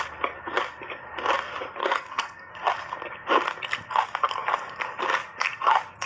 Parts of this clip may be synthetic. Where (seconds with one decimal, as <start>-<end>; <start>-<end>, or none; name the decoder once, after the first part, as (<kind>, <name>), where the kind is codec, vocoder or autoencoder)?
1.8-2.5 (codec, SNAC)